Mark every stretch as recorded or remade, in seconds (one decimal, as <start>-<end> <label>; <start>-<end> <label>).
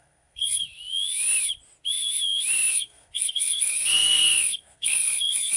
0.0-0.6 remade; 0.6-2.7 recorded; 2.7-5.6 remade